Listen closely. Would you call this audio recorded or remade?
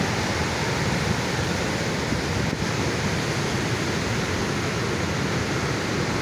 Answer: recorded